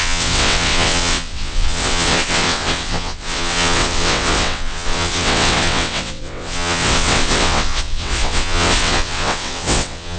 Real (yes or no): no